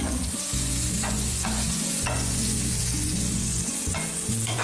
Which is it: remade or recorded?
remade